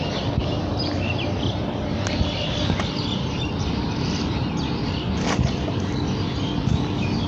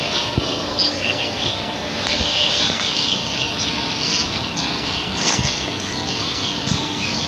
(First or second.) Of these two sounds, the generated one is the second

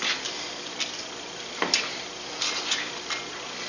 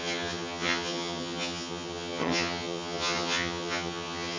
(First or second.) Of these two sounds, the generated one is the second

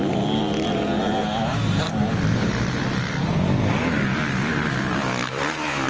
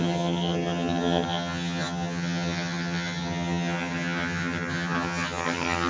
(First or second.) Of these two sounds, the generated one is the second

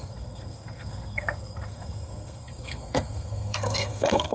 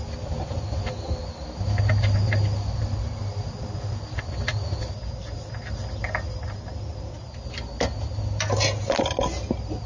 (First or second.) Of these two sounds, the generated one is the first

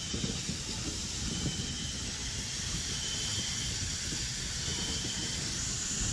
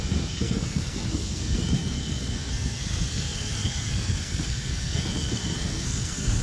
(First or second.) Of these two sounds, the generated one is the second